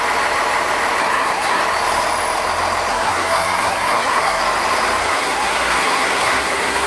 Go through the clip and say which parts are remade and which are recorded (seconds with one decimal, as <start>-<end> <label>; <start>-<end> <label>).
0.0-1.0 recorded; 1.0-1.6 remade; 1.6-2.9 recorded; 2.9-4.4 remade; 4.4-5.0 recorded; 5.0-6.9 remade